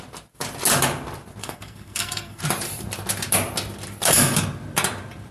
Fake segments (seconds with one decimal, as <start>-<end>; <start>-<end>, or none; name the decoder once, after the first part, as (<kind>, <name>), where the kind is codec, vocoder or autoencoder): 1.4-2.4 (codec, SNAC)